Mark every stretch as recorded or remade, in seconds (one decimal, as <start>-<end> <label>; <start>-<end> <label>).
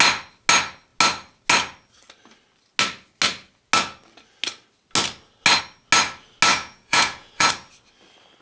0.0-6.5 recorded; 6.5-7.5 remade; 7.5-8.4 recorded